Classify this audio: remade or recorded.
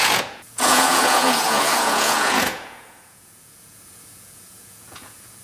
remade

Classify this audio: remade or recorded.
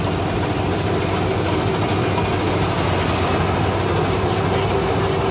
recorded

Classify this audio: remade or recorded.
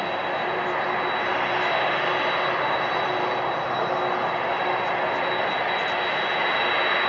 recorded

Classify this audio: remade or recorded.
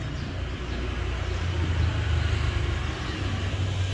recorded